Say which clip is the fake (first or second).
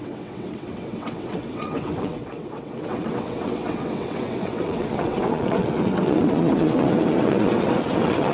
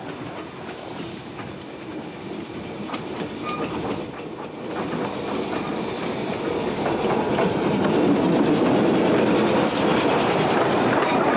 first